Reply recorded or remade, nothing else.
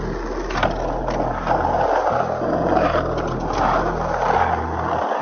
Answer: recorded